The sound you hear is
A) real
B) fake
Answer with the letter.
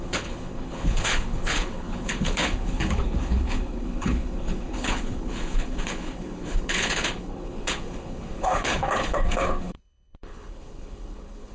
B